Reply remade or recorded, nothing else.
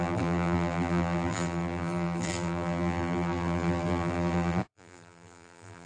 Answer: remade